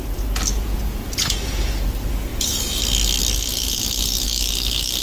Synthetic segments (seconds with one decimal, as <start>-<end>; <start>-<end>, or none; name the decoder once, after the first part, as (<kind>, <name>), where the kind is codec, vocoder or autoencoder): 0.5-1.9 (vocoder, Vocos); 2.3-2.8